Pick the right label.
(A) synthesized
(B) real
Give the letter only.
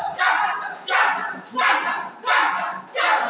B